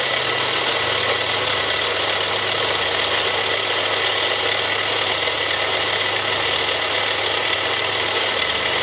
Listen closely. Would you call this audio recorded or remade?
recorded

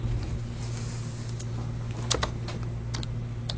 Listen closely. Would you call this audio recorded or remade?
recorded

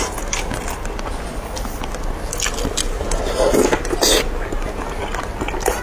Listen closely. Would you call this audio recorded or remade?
recorded